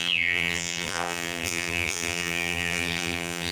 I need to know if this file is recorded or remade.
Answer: remade